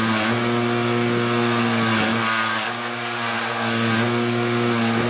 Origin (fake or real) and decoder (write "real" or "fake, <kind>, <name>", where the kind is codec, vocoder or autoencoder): real